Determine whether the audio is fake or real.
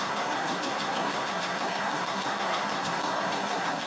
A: fake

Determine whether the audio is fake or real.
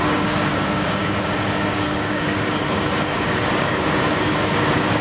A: fake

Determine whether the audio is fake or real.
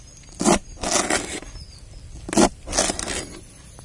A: real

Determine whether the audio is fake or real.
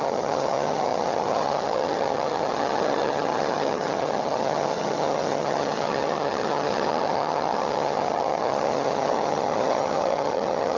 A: fake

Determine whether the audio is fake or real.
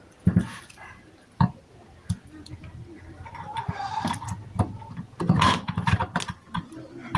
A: real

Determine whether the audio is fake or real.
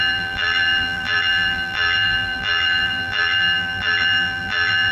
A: fake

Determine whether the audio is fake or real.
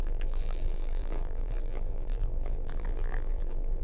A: fake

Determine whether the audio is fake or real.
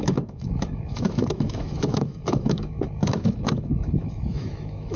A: fake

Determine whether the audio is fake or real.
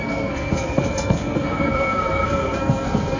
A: fake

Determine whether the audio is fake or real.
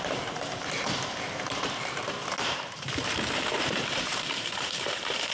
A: fake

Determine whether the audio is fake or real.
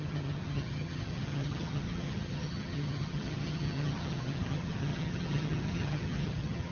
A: fake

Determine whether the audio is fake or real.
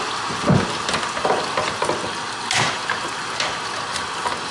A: real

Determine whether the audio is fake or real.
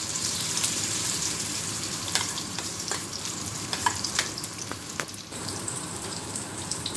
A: fake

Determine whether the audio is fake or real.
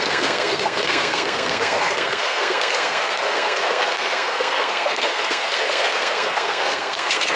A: fake